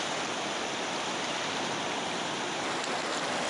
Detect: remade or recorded recorded